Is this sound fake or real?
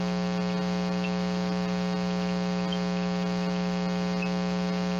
real